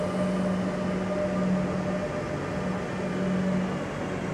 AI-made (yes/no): no